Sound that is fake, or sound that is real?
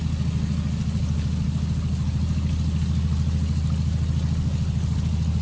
real